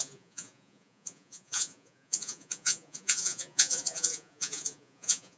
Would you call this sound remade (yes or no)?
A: yes